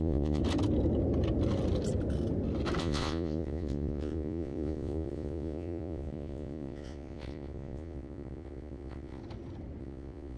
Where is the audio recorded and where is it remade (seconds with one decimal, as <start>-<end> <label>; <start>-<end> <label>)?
0.0-0.4 remade; 0.4-2.8 recorded; 2.8-9.2 remade; 9.2-9.8 recorded; 9.8-10.4 remade